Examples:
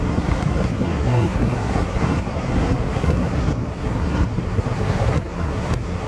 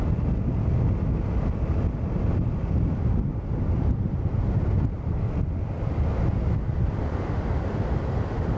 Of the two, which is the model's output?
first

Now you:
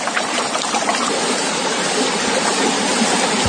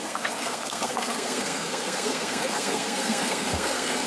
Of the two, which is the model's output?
second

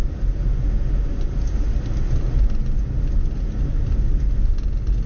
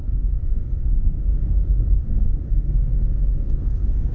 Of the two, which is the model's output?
second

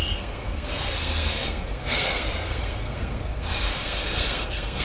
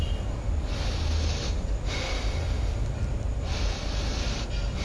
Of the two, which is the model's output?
first